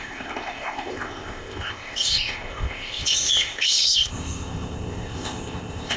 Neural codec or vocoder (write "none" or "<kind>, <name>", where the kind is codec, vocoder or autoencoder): codec, ZipCodec